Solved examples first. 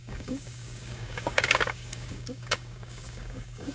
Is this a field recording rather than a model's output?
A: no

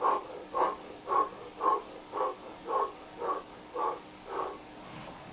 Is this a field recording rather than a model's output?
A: no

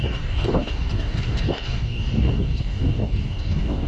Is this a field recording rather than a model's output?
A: no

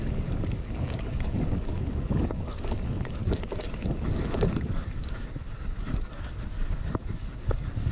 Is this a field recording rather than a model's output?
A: no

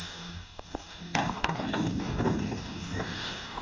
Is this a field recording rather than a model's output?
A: no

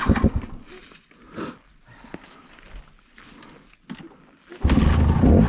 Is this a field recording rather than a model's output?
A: yes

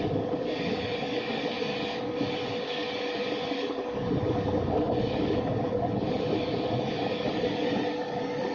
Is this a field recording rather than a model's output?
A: no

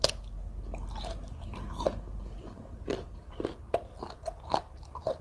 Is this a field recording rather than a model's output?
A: yes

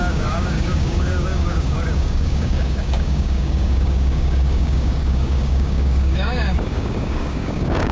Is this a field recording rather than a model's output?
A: no